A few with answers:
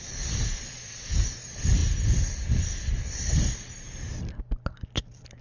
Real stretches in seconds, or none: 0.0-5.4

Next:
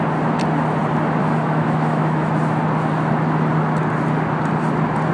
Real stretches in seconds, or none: 0.0-1.2; 2.3-5.1